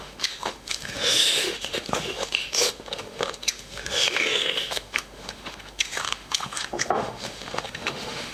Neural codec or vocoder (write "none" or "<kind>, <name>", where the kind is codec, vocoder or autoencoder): autoencoder, DAC-VAE